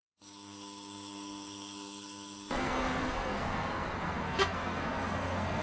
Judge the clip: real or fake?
fake